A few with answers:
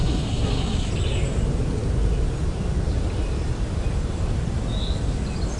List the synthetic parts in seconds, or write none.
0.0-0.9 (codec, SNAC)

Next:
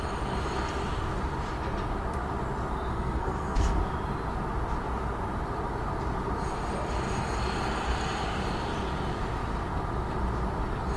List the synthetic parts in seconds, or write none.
2.9-3.8 (codec, SNAC)

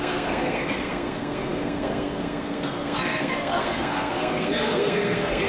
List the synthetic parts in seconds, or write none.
0.0-5.5 (codec, SNAC)